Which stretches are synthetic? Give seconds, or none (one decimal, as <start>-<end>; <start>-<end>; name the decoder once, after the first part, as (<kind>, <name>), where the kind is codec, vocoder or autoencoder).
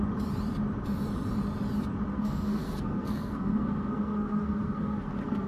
2.1-5.5 (codec, SNAC)